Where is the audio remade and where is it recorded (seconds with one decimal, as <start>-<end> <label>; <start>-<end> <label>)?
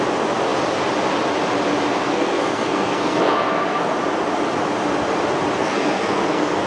0.0-2.0 recorded; 2.0-3.9 remade; 3.9-5.6 recorded; 5.6-6.7 remade